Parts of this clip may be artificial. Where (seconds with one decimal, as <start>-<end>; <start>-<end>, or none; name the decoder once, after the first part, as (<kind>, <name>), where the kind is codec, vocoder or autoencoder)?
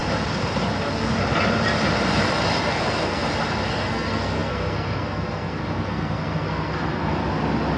2.7-3.2 (codec, SNAC); 3.7-7.2